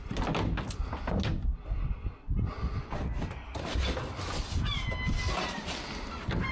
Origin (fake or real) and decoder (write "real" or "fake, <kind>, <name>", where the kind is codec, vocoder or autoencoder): real